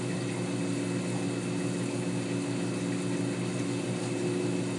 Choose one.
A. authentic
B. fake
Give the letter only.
A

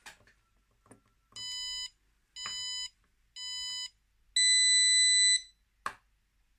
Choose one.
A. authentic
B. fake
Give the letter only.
A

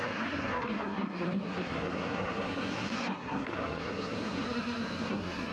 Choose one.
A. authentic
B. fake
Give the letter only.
B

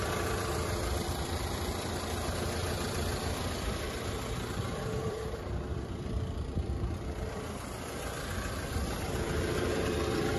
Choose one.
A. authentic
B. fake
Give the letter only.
B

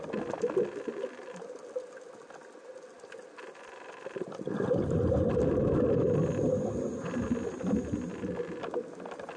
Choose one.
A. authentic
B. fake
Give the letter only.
A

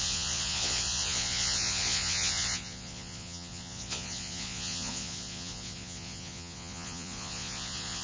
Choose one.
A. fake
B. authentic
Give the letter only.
A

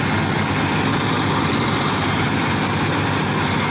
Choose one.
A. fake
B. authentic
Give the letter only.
B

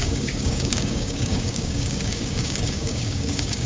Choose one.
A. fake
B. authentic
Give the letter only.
A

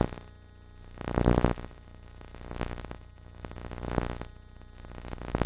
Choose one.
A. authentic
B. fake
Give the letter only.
A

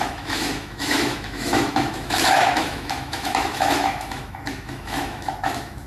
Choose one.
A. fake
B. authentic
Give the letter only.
A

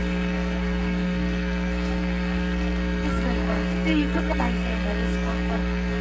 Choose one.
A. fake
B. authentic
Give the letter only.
A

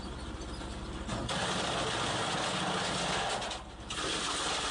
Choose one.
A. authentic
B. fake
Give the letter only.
A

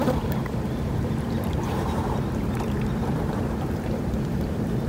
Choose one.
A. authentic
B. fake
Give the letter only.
B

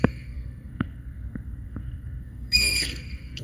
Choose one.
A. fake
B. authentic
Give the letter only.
A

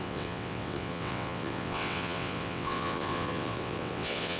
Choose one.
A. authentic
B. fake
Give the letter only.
B